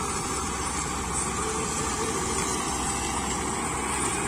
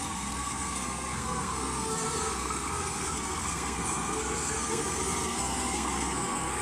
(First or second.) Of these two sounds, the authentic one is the first